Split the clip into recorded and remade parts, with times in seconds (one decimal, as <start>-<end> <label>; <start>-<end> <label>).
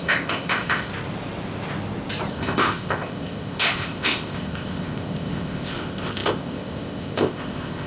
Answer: 0.0-0.9 remade; 0.9-2.3 recorded; 2.3-7.9 remade